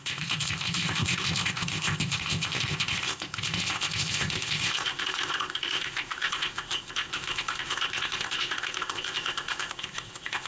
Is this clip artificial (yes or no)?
yes